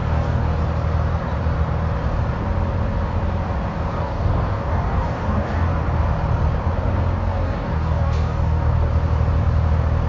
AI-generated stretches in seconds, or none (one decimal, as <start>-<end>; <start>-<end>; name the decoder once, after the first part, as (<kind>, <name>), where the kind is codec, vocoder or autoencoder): 0.0-0.6 (codec, DAC); 3.9-5.8; 7.3-8.9